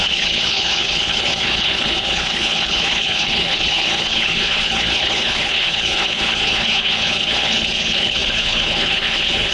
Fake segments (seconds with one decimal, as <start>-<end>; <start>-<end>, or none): 0.0-9.5